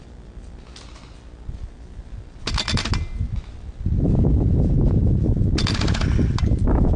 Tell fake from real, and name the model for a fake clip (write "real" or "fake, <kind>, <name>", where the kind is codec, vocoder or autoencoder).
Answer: real